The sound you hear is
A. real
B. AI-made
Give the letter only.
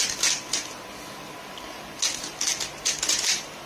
A